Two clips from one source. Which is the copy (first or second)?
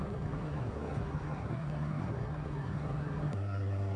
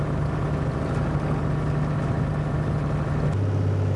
first